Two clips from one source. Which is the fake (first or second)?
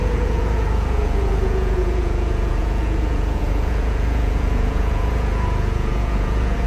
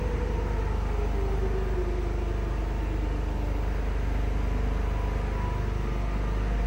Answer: first